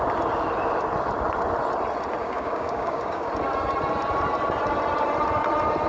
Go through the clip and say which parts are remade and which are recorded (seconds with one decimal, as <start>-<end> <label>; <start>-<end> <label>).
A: 0.0-2.2 recorded; 2.2-3.3 remade; 3.3-5.9 recorded